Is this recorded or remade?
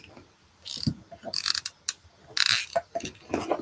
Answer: recorded